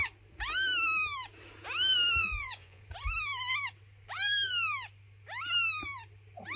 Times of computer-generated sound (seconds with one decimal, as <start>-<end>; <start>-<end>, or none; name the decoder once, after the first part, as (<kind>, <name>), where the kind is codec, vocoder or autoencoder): 2.2-2.8 (vocoder, Vocos)